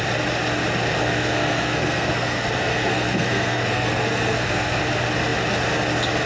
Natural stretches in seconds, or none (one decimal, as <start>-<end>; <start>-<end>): 0.0-1.0; 4.8-6.3